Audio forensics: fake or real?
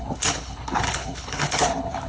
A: fake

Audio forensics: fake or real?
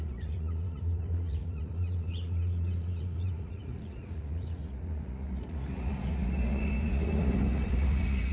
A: fake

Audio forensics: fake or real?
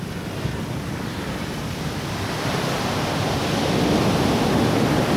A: real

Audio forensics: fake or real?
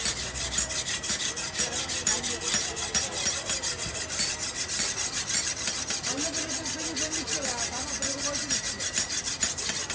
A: real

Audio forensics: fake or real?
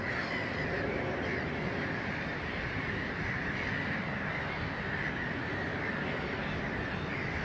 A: real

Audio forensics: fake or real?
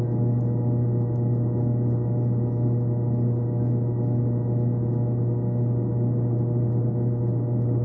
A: real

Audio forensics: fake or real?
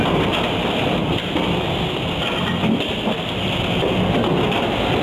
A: real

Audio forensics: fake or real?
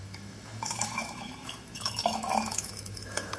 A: fake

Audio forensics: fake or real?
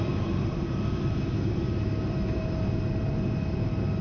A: real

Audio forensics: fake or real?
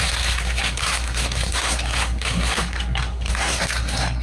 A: fake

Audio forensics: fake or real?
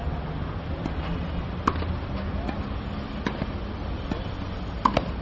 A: real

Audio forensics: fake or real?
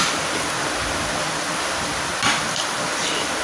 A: real